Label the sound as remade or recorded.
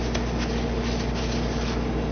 recorded